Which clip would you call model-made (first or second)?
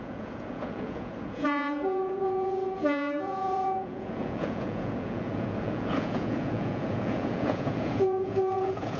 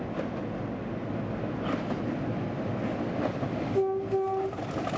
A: first